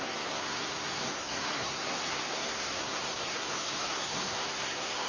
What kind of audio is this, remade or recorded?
remade